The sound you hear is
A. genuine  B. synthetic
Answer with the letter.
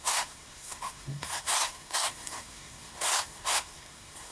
B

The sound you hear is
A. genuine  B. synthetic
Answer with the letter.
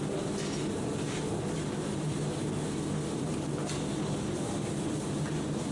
A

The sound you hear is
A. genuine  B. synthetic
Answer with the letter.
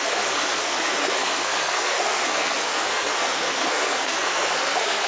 B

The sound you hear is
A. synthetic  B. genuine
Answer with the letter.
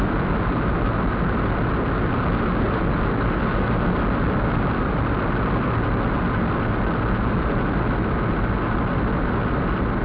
B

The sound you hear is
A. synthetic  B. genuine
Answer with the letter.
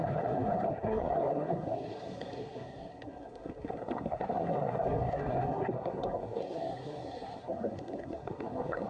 A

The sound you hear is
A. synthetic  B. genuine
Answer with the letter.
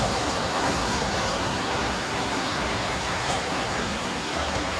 A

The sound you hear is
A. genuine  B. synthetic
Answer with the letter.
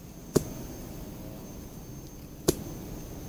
A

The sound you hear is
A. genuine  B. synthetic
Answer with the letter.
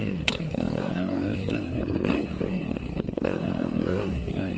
B